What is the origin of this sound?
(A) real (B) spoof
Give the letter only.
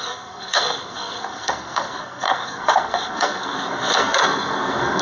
B